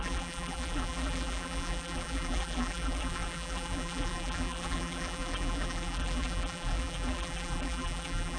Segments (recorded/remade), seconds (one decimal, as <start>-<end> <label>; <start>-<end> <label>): 0.0-8.4 remade

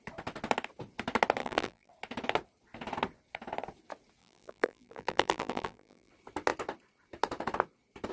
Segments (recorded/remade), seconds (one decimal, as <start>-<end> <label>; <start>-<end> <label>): 0.0-1.4 recorded; 1.4-1.9 remade; 1.9-4.2 recorded; 4.2-6.1 remade; 6.1-8.1 recorded